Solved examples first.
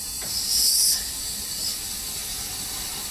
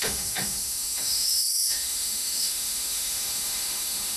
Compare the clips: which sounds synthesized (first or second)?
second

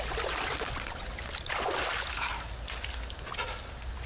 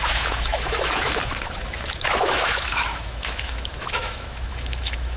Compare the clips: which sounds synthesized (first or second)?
second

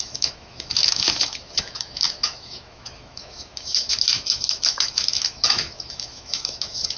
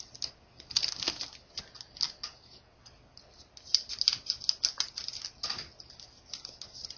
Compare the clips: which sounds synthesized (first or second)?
first